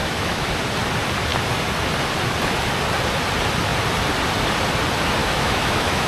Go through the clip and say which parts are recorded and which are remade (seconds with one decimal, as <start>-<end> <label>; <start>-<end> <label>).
0.0-0.5 remade; 0.5-5.2 recorded; 5.2-6.1 remade